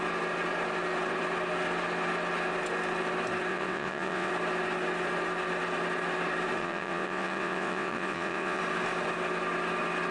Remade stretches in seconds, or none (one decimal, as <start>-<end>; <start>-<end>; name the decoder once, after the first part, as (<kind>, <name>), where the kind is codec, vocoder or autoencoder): 3.5-4.3 (vocoder, WaveNeXt); 6.6-8.6